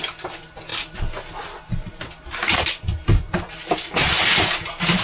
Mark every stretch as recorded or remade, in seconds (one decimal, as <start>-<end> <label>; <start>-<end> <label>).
0.0-5.0 recorded